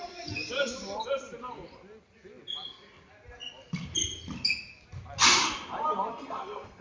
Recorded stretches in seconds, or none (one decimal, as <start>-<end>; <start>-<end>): 0.0-6.1